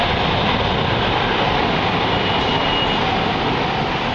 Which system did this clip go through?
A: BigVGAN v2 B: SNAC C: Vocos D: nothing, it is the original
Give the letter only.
D